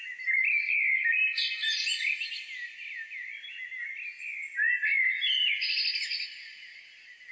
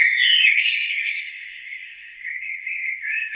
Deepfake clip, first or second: second